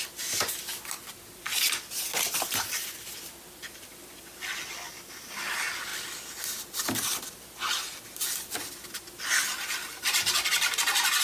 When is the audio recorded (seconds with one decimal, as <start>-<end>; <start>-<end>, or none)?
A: 0.0-11.2